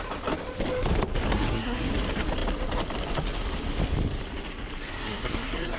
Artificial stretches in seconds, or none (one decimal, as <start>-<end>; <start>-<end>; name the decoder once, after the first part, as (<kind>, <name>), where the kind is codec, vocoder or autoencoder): 1.3-1.9 (codec, SNAC); 4.9-5.8

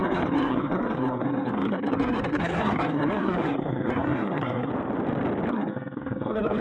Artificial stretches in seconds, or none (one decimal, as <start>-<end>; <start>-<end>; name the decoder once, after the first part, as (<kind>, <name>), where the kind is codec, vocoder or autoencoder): 0.0-4.7 (codec, SNAC); 5.5-6.6

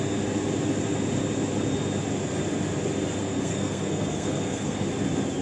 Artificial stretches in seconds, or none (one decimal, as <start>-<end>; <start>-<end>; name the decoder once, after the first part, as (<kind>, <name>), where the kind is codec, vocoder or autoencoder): 3.2-4.9 (codec, SNAC)

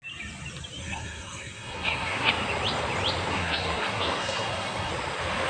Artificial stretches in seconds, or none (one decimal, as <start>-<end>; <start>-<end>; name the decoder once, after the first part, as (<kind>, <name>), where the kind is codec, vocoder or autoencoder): 0.8-2.3 (codec, SNAC); 3.3-4.9

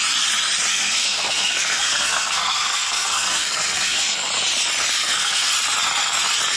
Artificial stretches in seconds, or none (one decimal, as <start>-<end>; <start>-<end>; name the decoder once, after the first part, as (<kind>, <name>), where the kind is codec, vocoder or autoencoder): 0.7-4.3 (codec, SNAC); 5.0-5.5

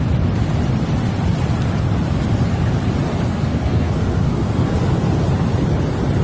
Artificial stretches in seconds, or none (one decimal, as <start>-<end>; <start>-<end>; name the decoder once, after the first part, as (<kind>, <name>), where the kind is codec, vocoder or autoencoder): 3.3-4.8 (codec, SNAC)

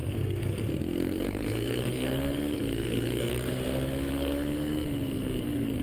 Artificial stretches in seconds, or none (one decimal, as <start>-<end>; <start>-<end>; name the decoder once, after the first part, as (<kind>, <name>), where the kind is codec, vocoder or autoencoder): 0.0-3.5 (codec, SNAC); 4.1-5.8